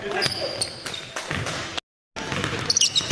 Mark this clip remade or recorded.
recorded